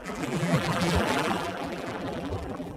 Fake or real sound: fake